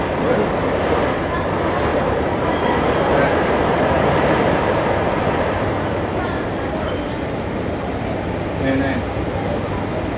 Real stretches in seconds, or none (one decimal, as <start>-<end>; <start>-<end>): 0.0-1.9; 7.1-10.2